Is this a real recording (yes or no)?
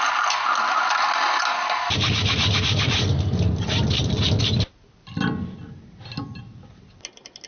yes